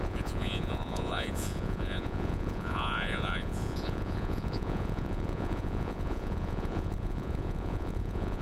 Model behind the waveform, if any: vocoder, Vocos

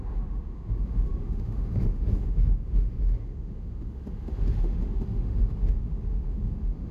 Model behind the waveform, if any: autoencoder, DAC-VAE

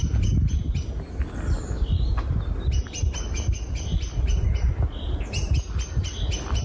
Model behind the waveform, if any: none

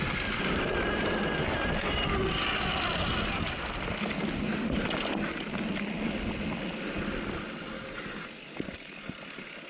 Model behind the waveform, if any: none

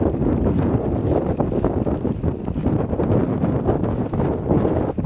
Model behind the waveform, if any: none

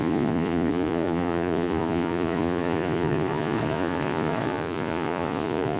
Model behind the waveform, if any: vocoder, Vocos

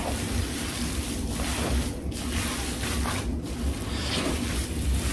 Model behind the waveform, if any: vocoder, BigVGAN v2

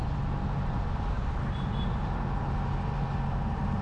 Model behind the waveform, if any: none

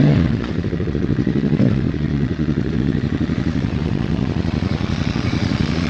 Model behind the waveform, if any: vocoder, Vocos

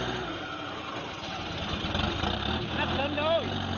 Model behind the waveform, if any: none